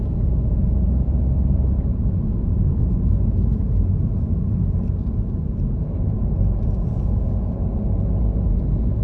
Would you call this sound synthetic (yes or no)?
yes